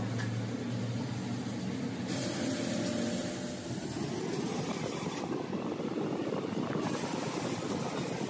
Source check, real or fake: real